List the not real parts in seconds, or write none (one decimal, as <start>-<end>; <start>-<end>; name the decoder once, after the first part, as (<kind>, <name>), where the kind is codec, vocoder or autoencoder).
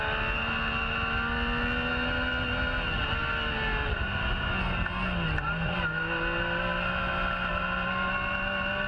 none